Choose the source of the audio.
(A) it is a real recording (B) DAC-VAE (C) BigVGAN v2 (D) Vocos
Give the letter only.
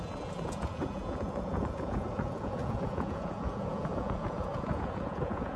D